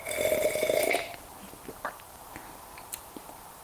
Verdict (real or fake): real